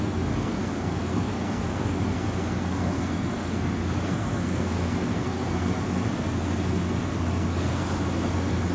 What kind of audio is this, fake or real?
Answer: fake